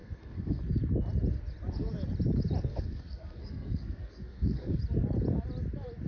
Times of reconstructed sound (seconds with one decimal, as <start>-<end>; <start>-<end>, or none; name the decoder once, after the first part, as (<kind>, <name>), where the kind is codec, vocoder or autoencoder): 0.0-0.6 (codec, SNAC); 2.7-4.8